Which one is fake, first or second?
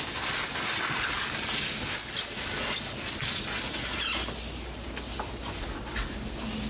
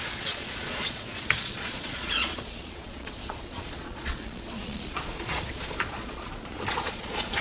second